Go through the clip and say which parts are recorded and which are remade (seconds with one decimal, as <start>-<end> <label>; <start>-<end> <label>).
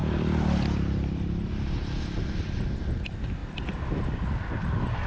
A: 0.0-2.8 remade; 2.8-3.4 recorded; 3.4-5.1 remade